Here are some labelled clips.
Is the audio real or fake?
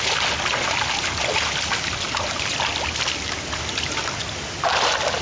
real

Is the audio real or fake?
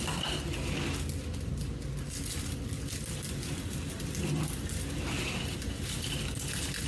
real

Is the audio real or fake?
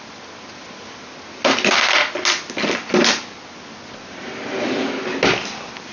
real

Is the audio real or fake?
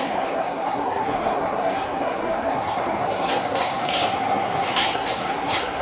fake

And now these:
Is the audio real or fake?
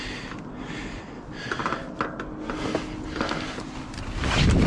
real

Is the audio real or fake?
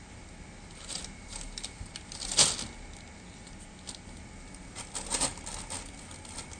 real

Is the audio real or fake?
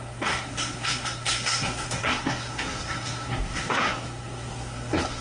fake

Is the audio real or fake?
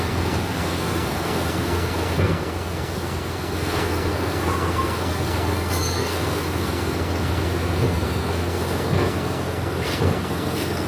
fake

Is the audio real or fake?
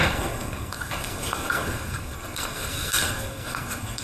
fake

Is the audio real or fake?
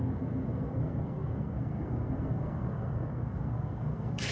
fake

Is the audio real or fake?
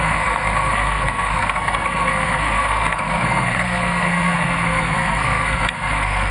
fake